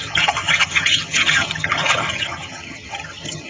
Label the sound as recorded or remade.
remade